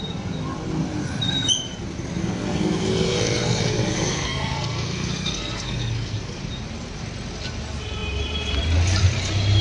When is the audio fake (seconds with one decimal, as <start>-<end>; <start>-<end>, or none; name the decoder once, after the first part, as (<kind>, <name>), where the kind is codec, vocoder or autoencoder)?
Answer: 2.2-6.4 (codec, SNAC)